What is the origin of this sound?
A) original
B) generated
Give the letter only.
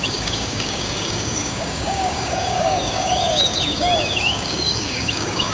B